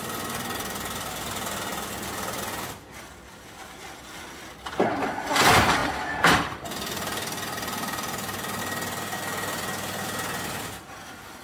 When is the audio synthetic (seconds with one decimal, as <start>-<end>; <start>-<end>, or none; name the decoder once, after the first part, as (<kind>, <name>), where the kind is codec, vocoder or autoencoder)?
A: 3.6-4.9 (vocoder, BigVGAN v2); 5.8-8.6